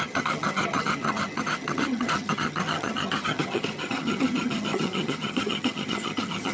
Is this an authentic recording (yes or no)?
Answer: no